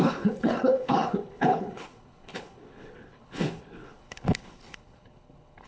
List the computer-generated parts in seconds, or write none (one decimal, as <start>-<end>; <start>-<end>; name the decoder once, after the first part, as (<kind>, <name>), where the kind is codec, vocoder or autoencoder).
0.0-5.7 (codec, HILCodec)